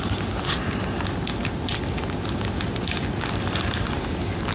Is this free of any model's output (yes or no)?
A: yes